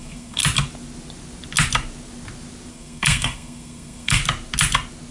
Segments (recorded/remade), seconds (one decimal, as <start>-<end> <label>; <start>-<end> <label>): 0.0-0.4 remade; 0.4-2.7 recorded; 2.7-4.2 remade; 4.2-5.1 recorded

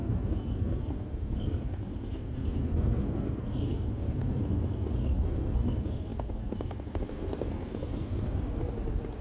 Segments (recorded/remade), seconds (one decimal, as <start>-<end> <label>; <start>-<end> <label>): 0.0-8.6 remade; 8.6-9.2 recorded

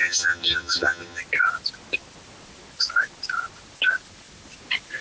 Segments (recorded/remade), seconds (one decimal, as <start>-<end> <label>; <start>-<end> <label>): 0.0-1.2 remade; 1.2-5.0 recorded